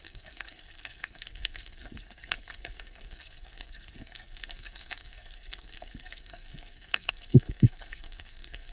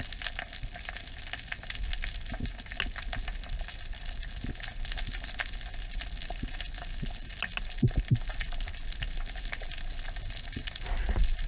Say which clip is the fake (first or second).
first